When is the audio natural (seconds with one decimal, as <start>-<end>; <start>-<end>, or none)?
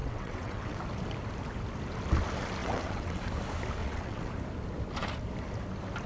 0.8-2.6; 3.2-3.8; 4.3-6.1